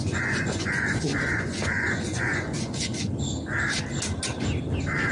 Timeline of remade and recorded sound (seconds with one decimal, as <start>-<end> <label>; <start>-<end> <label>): 0.0-3.1 remade; 3.1-5.1 recorded